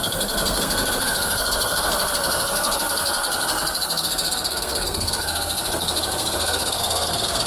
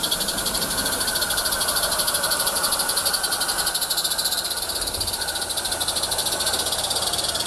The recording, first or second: second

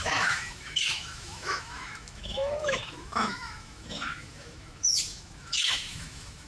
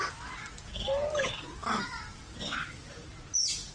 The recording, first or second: second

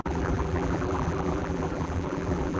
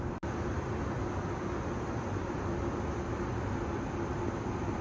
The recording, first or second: second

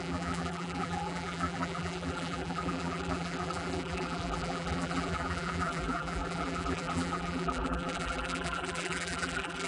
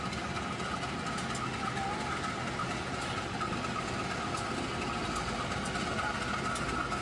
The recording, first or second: second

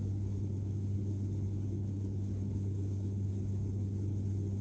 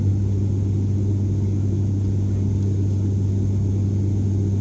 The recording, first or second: second